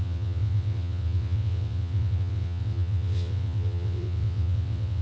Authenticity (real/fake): fake